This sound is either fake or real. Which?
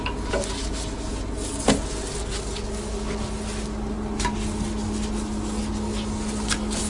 real